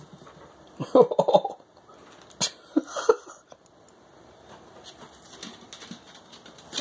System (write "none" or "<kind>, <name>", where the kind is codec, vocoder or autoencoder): none